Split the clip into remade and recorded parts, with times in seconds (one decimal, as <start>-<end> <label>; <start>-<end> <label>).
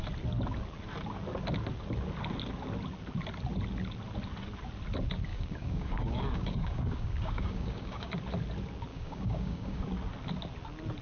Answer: 0.0-5.3 recorded; 5.3-8.1 remade; 8.1-8.9 recorded; 8.9-9.8 remade; 9.8-11.0 recorded